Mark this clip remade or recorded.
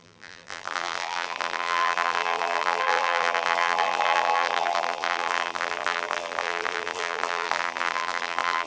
remade